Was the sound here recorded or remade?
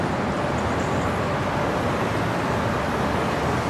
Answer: recorded